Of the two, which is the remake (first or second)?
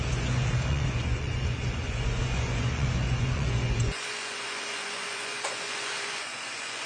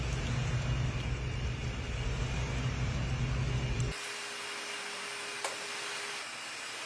first